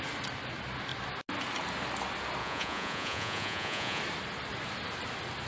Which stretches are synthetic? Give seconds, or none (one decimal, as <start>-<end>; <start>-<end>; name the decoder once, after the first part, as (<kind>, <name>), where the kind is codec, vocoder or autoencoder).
2.4-4.0 (vocoder, Vocos)

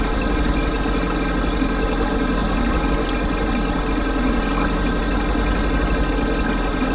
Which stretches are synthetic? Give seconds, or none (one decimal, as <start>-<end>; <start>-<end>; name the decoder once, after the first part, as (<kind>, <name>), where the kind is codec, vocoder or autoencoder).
none

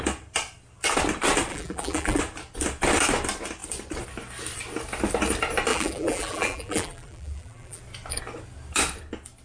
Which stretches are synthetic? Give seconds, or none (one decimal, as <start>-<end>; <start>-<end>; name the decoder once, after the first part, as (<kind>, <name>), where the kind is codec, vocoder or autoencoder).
1.5-2.2 (vocoder, BigVGAN v2); 5.7-7.8